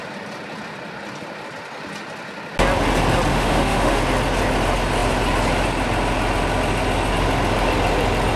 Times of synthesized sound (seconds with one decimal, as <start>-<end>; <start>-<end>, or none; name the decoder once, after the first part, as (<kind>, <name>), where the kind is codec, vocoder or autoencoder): 3.3-4.0 (autoencoder, DAC-VAE)